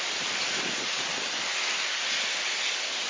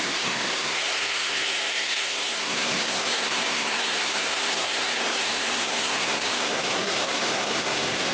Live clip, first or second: first